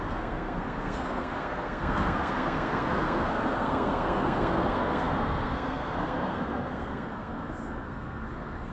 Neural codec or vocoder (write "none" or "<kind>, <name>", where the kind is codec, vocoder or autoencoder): codec, SNAC